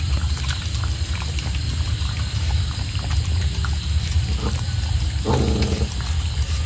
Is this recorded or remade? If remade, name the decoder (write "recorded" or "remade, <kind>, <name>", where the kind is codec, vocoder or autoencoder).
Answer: recorded